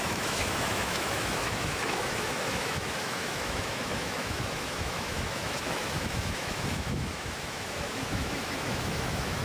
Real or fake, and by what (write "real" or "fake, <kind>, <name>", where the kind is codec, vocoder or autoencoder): fake, autoencoder, DAC-VAE